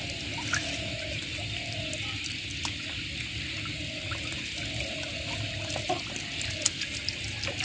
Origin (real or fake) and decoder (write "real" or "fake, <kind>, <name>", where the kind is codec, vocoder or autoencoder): real